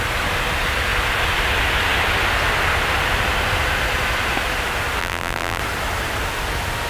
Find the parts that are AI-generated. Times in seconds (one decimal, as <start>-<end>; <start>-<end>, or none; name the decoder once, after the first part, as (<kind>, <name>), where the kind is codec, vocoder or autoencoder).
5.0-5.6 (vocoder, BigVGAN v2)